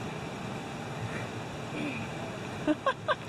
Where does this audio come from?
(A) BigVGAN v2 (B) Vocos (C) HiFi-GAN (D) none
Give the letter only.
D